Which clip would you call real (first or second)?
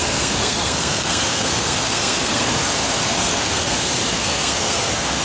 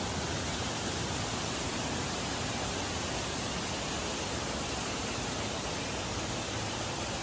second